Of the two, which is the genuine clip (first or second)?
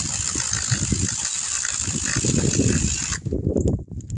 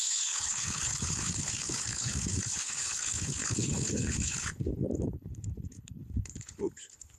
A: first